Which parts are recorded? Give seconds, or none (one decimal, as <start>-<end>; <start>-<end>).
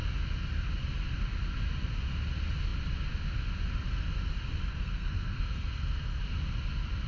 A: 0.0-4.7; 6.2-7.1